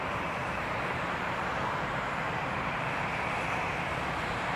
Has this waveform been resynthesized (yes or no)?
yes